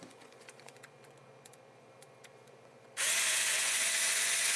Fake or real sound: fake